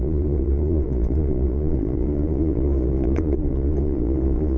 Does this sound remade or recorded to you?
remade